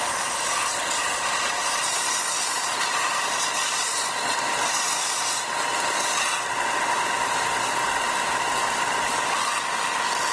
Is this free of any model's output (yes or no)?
yes